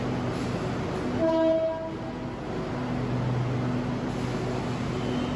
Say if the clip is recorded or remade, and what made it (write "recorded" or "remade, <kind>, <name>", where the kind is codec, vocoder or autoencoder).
recorded